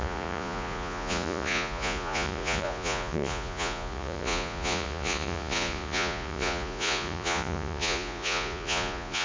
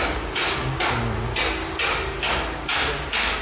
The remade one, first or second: first